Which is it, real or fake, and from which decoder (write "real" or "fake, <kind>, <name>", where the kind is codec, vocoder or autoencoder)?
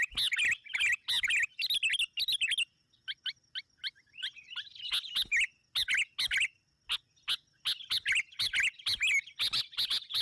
real